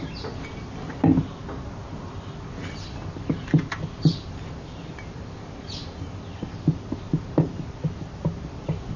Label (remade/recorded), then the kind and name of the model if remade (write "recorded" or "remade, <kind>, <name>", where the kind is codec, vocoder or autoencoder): recorded